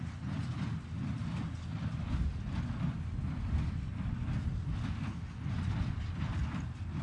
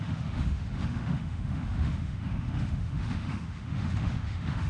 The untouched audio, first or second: first